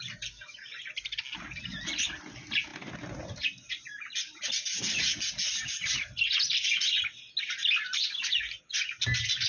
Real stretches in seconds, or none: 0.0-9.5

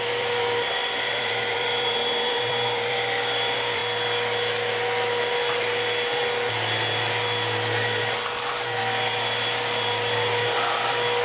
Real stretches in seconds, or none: 3.8-8.8

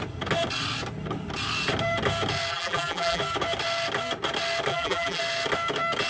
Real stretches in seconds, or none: 0.0-2.5; 3.2-4.7; 5.2-6.1

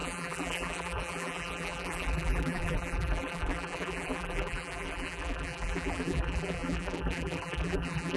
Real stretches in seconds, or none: none

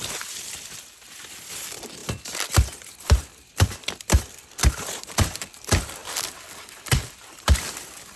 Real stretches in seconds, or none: 6.0-7.2

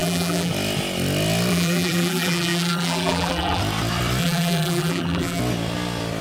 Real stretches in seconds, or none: 0.5-1.5; 3.6-4.2; 5.4-6.2

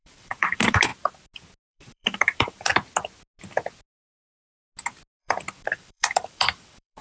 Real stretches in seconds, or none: 0.9-1.7; 2.7-5.2

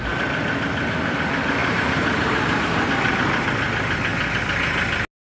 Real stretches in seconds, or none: 0.0-1.6; 2.9-5.2